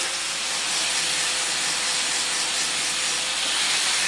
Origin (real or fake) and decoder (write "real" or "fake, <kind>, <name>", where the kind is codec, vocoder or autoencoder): real